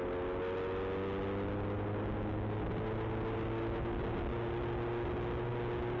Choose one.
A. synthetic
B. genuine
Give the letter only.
B